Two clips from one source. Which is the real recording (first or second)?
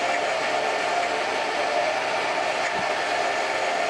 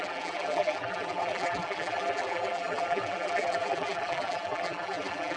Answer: first